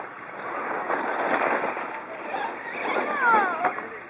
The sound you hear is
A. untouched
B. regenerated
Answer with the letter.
A